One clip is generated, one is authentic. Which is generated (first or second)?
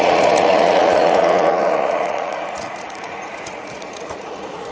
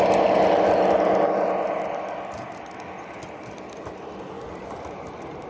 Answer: first